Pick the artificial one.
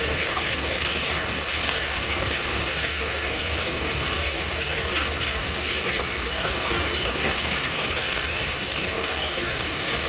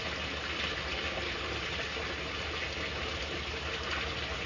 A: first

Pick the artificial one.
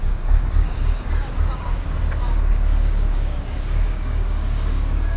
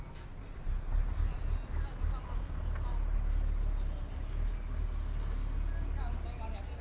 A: first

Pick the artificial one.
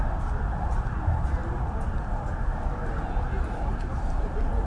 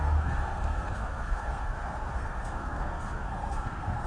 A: second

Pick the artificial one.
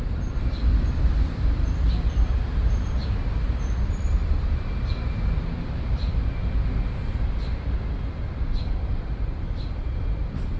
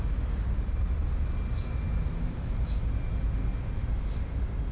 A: first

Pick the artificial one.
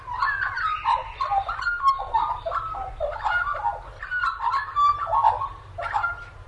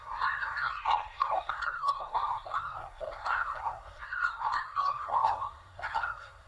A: second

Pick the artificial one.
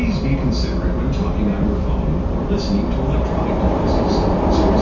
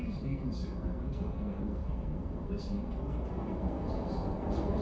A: second